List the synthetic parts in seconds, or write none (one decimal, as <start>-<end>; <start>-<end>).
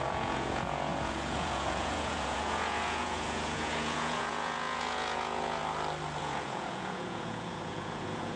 0.0-5.6; 6.2-8.4